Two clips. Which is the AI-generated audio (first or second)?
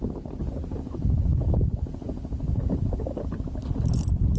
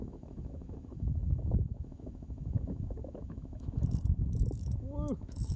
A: second